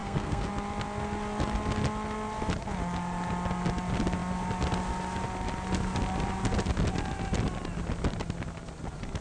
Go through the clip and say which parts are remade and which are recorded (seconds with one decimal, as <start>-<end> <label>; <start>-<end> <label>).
0.0-0.5 remade; 0.5-9.2 recorded